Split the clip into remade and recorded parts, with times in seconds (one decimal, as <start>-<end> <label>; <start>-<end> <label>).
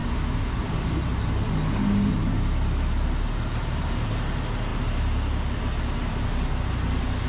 0.0-7.3 recorded